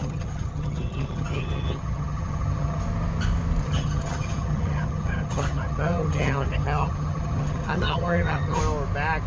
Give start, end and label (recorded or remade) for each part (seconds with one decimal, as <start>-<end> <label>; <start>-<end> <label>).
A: 0.0-2.8 remade; 2.8-3.6 recorded; 3.6-8.6 remade; 8.6-9.3 recorded

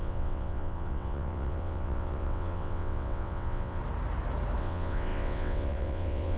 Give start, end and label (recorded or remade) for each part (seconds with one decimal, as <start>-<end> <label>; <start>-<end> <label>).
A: 0.0-3.8 remade; 3.8-4.6 recorded; 4.6-6.4 remade

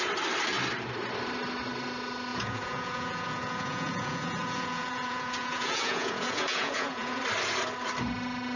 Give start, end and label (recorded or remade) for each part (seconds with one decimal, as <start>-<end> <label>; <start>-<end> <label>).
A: 0.0-2.3 recorded; 2.3-7.2 remade; 7.2-8.6 recorded

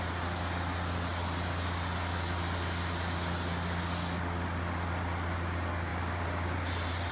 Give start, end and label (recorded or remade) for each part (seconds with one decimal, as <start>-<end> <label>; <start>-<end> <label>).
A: 0.0-5.9 recorded; 5.9-7.1 remade

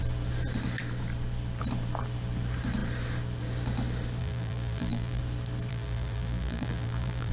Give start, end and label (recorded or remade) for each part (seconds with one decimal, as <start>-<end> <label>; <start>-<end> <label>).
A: 0.0-4.2 recorded; 4.2-5.2 remade; 5.2-5.7 recorded; 5.7-7.3 remade